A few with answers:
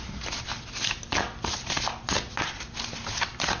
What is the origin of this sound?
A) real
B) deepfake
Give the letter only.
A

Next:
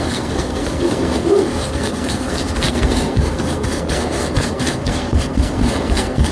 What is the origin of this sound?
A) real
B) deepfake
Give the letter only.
B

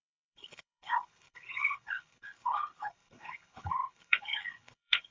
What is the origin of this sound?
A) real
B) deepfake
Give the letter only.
B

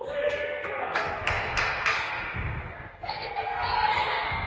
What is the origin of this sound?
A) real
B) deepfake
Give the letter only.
B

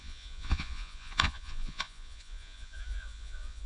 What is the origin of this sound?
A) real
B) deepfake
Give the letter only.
B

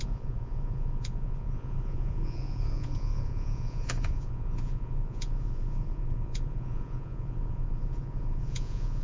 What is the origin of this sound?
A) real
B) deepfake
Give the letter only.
B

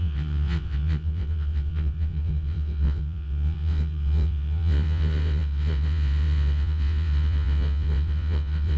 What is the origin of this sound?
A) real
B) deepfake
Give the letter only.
B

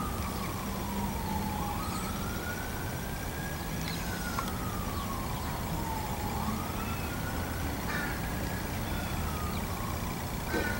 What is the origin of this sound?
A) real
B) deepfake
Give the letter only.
A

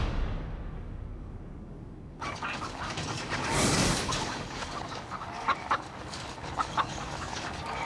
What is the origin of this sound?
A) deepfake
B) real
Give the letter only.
A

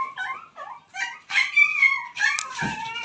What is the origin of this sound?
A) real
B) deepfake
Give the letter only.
B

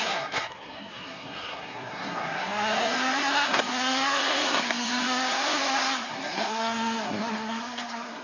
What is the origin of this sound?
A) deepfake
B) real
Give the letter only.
A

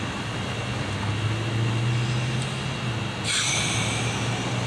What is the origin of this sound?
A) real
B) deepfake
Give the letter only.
A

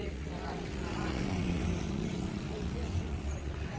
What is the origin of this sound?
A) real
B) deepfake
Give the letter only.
B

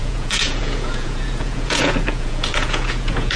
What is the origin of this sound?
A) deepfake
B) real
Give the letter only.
A